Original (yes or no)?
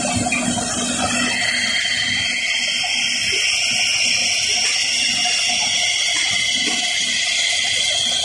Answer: yes